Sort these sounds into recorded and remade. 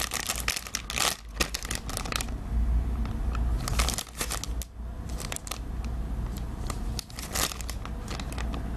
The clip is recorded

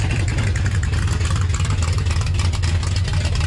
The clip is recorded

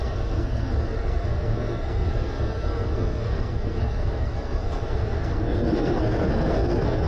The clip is remade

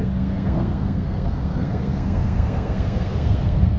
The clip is remade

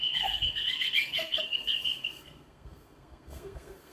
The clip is remade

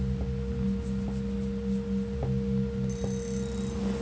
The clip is recorded